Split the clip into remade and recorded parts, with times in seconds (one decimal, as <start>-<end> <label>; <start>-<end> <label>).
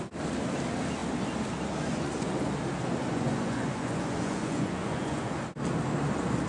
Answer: 0.0-1.9 recorded; 1.9-2.5 remade; 2.5-3.1 recorded; 3.1-5.4 remade; 5.4-6.5 recorded